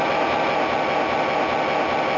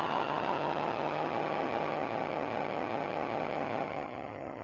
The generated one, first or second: second